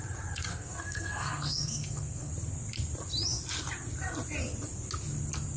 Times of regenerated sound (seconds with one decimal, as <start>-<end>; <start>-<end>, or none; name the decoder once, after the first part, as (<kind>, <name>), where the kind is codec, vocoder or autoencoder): 0.5-2.3 (codec, SNAC)